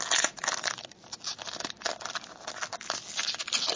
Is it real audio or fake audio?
real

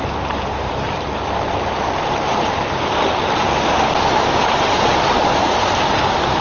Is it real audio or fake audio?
real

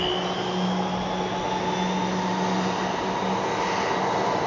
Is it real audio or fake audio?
real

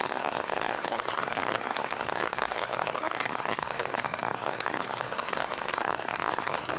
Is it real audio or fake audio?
fake